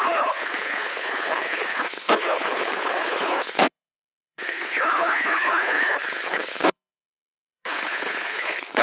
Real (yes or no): no